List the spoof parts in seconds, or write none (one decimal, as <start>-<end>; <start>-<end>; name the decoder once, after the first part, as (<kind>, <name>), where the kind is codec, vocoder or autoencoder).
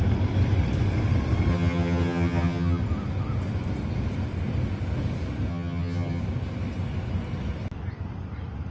1.5-2.8 (vocoder, HiFi-GAN); 5.5-6.2